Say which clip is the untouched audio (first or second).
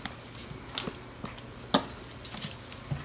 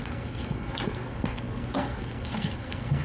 first